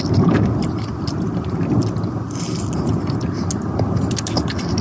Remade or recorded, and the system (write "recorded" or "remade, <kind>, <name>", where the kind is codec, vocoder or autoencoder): recorded